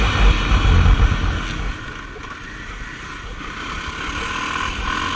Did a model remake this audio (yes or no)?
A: no